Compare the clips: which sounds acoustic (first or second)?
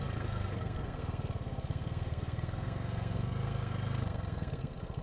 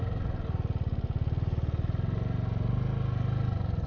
second